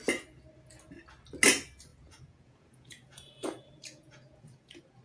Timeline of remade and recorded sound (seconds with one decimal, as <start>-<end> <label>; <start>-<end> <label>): 0.0-1.9 recorded; 1.9-5.0 remade

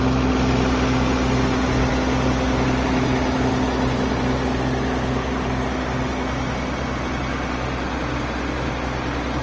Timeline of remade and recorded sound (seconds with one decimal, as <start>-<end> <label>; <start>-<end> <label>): 0.0-9.4 recorded